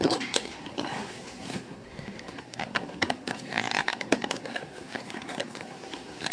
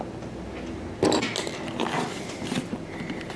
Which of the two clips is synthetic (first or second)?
first